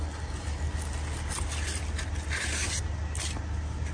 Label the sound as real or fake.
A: real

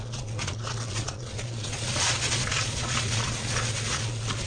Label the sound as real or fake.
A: fake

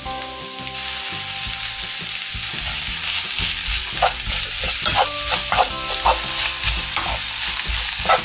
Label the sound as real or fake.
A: real